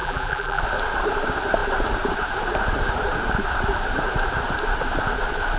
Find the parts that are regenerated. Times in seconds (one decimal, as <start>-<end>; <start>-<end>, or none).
0.0-0.6